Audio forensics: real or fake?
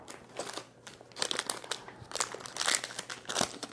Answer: real